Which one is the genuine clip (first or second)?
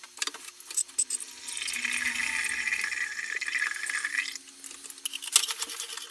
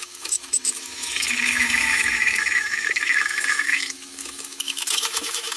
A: first